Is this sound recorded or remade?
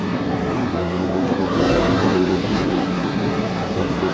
remade